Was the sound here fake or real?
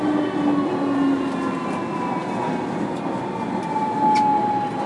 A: real